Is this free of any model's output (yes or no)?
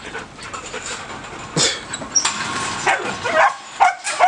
yes